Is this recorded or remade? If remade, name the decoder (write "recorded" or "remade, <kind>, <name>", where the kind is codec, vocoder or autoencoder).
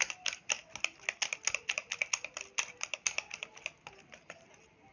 recorded